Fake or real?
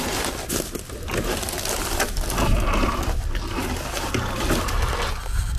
real